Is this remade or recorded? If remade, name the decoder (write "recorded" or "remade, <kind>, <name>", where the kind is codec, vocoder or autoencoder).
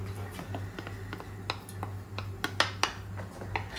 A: recorded